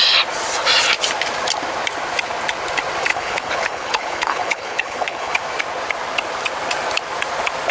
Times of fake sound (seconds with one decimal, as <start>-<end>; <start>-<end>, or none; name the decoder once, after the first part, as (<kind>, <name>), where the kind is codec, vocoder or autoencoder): 3.1-5.4 (codec, HILCodec)